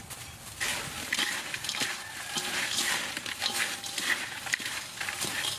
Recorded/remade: recorded